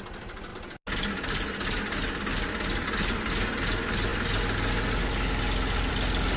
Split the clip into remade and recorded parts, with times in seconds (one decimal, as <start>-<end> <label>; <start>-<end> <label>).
0.0-6.4 recorded